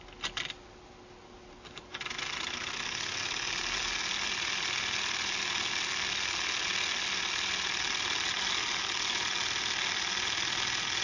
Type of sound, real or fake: real